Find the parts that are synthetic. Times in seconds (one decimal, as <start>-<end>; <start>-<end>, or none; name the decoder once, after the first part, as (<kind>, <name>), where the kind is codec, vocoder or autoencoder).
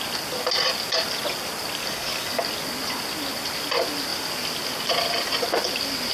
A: 1.8-2.4 (codec, DAC)